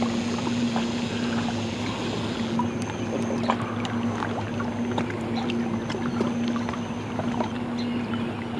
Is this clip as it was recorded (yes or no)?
yes